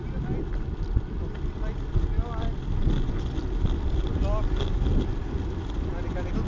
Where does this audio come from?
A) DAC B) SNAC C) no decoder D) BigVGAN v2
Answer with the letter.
C